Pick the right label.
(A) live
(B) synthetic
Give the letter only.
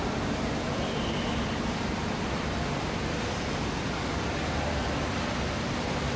A